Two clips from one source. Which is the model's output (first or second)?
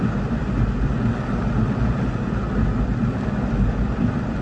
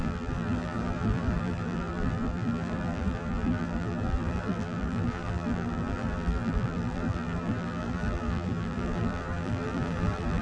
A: second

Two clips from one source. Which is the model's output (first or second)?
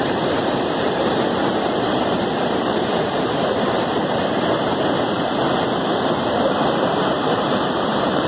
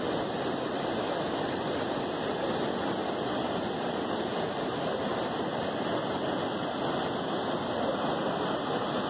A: first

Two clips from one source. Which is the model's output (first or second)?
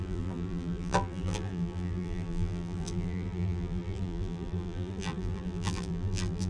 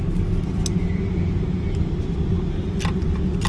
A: first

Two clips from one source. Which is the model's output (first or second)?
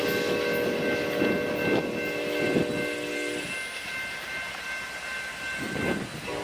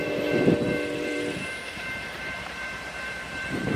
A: second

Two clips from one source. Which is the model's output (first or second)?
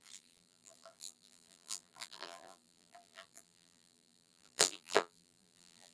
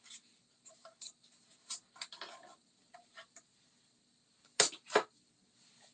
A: first